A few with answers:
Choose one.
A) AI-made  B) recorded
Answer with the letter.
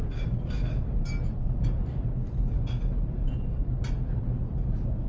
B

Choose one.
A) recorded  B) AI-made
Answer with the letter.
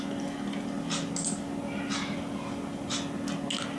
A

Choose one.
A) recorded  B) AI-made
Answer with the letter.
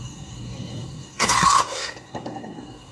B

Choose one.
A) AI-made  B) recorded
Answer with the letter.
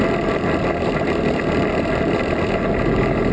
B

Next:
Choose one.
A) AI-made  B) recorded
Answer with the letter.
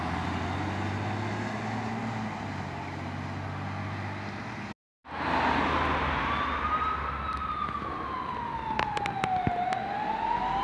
B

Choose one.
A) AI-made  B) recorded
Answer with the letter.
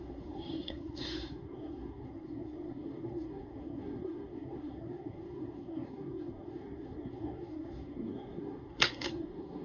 A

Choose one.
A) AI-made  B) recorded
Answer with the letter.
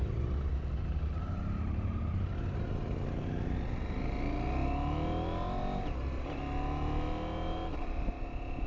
B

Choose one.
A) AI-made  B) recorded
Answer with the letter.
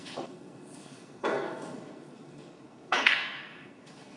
A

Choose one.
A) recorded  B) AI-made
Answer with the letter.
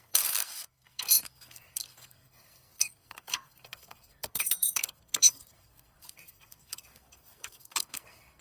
B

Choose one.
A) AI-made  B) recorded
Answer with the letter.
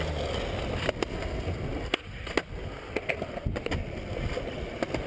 B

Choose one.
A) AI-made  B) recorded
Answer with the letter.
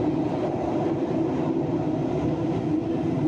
B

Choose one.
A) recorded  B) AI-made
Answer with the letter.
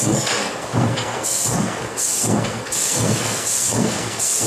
B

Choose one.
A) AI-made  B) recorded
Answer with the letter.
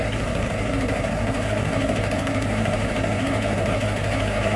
A